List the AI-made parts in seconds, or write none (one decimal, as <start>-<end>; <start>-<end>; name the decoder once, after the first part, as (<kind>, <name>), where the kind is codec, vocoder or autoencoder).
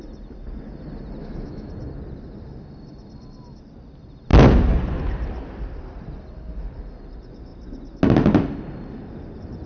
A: 1.2-1.7 (autoencoder, DAC-VAE)